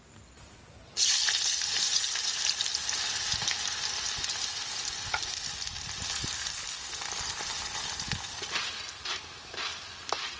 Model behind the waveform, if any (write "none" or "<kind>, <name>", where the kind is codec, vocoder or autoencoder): none